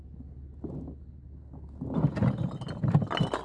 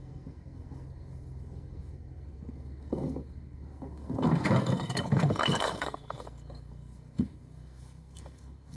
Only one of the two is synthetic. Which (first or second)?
second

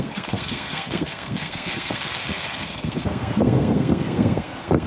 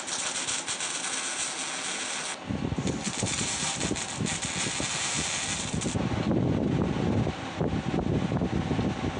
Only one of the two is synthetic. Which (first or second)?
first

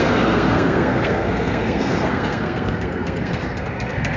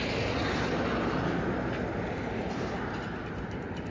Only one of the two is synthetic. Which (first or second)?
first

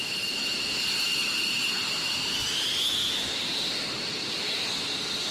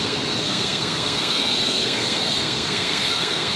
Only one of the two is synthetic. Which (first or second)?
second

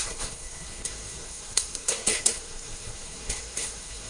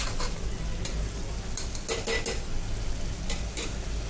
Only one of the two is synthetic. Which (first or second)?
first